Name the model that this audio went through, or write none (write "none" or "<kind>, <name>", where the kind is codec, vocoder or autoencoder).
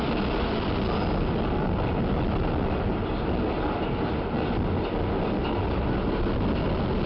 none